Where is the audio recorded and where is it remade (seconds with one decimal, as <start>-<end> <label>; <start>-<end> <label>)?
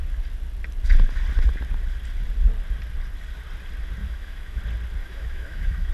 0.0-4.0 recorded; 4.0-4.6 remade; 4.6-5.0 recorded; 5.0-5.9 remade